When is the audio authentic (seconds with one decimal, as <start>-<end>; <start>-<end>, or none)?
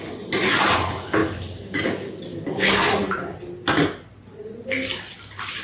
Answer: 0.0-2.3; 3.0-5.6